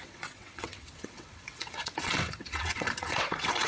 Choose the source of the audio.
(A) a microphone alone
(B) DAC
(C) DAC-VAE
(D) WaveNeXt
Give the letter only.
D